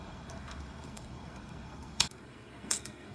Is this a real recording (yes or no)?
no